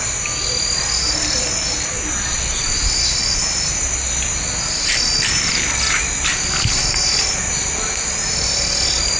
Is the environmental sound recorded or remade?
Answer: recorded